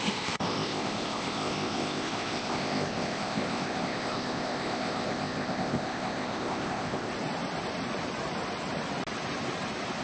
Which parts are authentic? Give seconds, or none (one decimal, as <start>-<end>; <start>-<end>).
7.1-10.0